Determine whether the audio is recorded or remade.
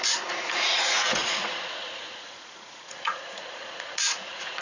remade